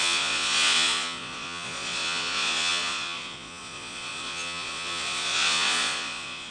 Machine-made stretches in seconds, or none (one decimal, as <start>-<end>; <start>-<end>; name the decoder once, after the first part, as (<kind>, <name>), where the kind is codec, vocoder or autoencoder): 0.0-6.5 (vocoder, Vocos)